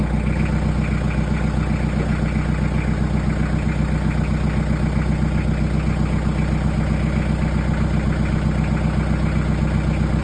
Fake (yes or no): no